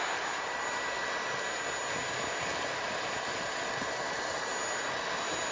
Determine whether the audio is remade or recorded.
recorded